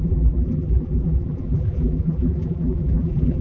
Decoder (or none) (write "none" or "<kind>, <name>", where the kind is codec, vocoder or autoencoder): vocoder, BigVGAN v2